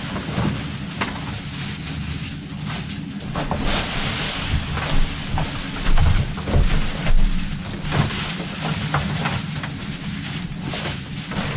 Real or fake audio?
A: real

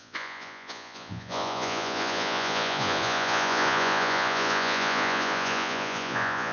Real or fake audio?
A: fake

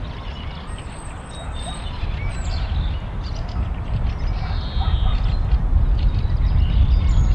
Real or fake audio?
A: real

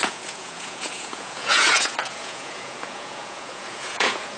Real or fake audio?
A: fake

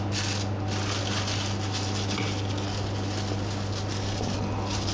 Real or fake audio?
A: real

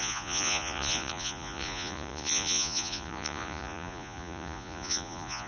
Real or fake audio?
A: fake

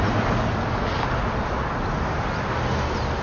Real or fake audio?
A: real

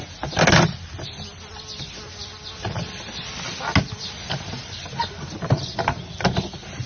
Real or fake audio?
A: real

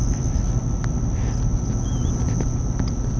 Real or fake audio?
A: real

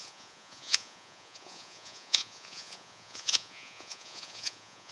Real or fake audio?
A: fake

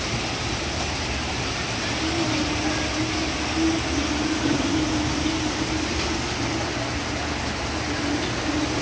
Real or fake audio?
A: real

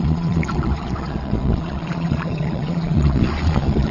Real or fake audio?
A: fake